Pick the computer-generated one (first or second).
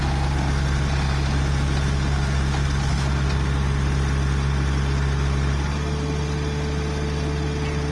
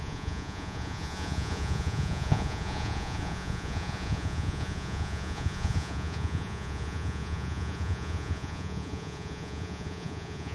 second